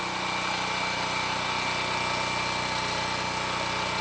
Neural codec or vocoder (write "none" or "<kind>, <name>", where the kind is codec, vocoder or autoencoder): none